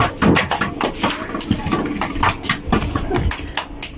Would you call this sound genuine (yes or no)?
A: yes